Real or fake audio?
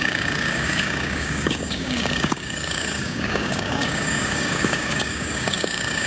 fake